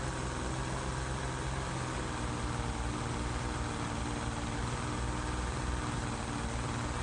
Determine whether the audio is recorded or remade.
recorded